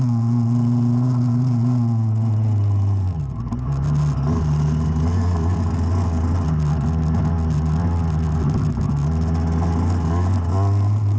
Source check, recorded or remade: recorded